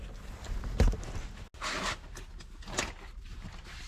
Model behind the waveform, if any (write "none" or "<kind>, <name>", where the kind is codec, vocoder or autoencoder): none